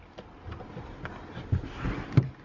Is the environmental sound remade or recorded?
recorded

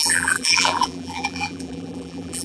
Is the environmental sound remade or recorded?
remade